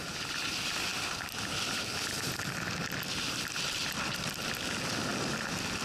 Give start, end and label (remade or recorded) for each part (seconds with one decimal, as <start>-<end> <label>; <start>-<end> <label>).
0.0-5.1 recorded; 5.1-5.8 remade